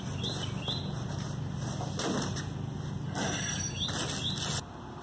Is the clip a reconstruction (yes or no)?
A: no